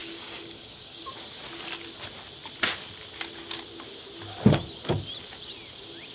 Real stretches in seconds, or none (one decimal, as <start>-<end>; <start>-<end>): 1.0-6.1

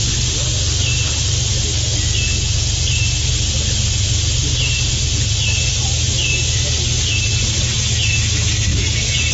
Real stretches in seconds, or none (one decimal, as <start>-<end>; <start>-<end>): 0.0-8.7

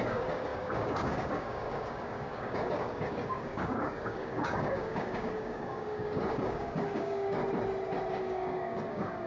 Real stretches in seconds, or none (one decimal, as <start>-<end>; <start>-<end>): 7.4-8.2

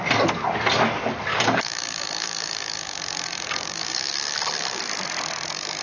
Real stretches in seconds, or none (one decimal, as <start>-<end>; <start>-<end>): 0.0-1.3; 4.8-5.8